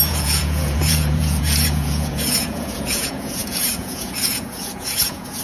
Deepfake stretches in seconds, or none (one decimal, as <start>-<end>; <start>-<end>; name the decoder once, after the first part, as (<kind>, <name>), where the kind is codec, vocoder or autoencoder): 0.0-5.4 (vocoder, Vocos)